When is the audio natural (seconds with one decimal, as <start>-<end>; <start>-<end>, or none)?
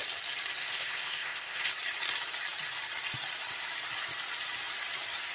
0.0-0.6; 1.7-5.3